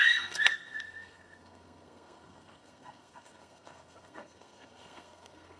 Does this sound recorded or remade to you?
remade